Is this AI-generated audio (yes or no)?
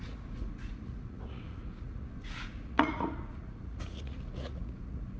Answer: yes